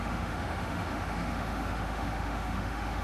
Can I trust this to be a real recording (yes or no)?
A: no